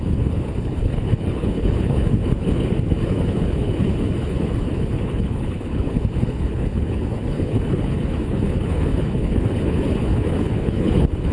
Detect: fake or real fake